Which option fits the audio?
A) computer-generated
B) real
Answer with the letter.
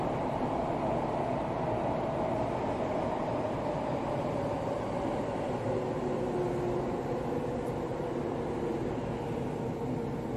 B